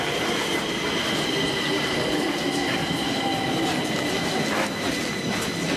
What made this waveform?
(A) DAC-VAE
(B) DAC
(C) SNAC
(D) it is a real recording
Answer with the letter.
D